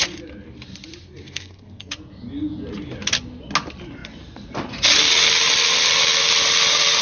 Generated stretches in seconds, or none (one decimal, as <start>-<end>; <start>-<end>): 1.2-1.9